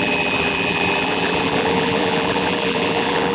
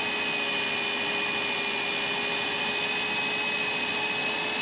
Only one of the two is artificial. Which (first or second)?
first